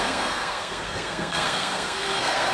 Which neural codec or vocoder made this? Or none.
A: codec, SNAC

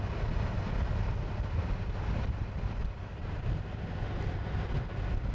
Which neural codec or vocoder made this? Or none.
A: none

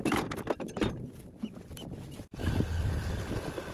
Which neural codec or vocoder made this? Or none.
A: none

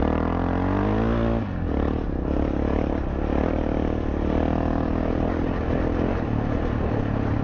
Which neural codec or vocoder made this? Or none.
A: none